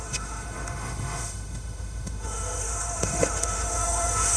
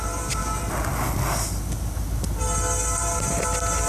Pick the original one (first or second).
second